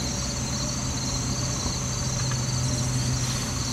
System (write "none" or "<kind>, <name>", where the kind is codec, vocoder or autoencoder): none